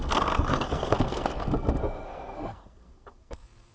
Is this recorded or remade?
remade